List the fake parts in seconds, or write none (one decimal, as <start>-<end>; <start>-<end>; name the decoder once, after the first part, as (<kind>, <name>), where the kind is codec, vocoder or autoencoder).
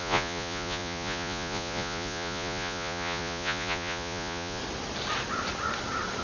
0.0-4.6 (vocoder, Vocos)